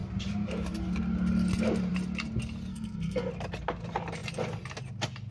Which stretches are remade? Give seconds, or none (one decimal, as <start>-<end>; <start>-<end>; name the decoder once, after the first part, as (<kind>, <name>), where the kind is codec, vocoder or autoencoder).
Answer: 2.7-3.3 (codec, SNAC)